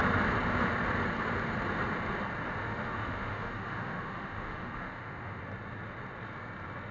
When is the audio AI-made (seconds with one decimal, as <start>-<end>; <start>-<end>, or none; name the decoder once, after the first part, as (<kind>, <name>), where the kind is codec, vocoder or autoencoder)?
2.6-5.4 (autoencoder, DAC-VAE)